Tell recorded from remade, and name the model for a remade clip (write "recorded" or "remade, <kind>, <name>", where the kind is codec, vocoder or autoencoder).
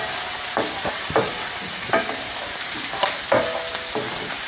remade, vocoder, BigVGAN v2